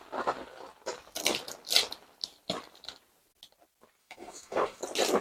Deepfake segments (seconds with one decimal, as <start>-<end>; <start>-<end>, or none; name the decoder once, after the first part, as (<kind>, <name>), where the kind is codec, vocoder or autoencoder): 4.0-4.8 (autoencoder, DAC-VAE)

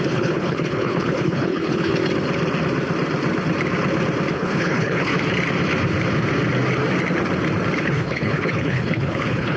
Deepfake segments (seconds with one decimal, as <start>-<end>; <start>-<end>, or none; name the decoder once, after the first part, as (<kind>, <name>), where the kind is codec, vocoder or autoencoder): 0.0-1.9 (codec, HILCodec); 4.3-5.1; 7.8-9.6

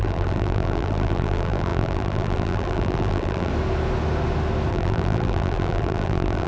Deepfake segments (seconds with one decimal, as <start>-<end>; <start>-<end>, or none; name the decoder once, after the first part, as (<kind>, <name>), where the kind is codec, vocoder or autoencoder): 0.0-3.5 (vocoder, BigVGAN v2); 4.7-6.5